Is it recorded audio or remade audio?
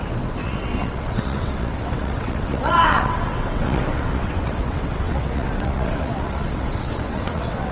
remade